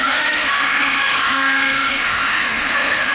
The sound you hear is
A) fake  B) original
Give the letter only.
A